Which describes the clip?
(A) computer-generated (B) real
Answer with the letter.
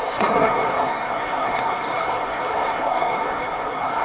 A